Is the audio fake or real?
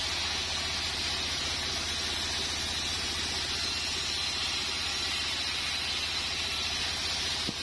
real